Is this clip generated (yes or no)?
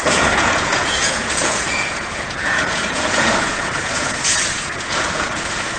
yes